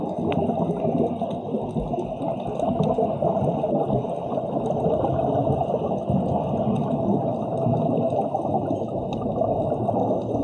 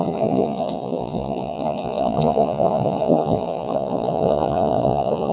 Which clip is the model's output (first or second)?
second